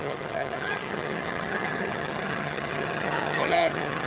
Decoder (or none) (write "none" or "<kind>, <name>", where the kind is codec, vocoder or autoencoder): vocoder, HiFi-GAN